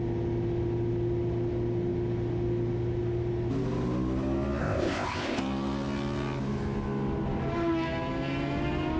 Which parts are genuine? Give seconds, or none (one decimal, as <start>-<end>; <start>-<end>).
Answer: 0.0-4.6; 5.4-9.0